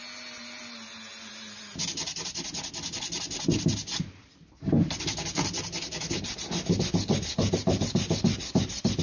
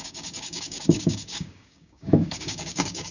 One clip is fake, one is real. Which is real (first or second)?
first